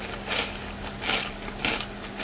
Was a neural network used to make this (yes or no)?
no